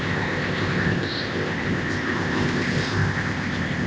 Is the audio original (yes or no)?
no